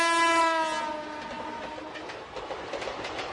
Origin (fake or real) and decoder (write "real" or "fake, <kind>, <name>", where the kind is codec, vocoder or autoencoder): real